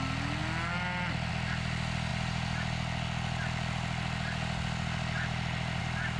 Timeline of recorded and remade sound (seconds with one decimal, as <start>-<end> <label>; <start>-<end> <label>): 0.0-6.2 recorded